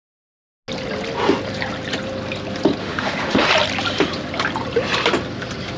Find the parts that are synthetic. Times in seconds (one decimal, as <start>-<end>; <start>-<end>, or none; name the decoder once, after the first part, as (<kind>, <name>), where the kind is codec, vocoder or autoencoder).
2.8-3.5 (autoencoder, DAC-VAE)